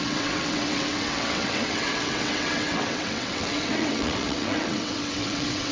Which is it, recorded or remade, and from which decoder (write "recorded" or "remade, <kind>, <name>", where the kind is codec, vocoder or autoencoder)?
remade, vocoder, WaveNeXt